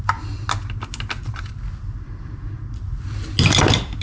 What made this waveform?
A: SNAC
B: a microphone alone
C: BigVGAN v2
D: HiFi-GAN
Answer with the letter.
B